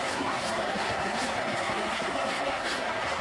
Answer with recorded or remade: remade